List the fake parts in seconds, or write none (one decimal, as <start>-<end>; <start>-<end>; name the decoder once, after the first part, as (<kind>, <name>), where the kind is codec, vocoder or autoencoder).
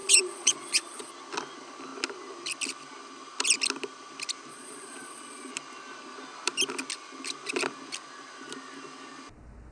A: 0.0-1.1 (vocoder, Vocos); 4.5-5.5